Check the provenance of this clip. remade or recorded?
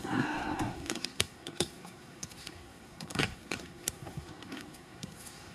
remade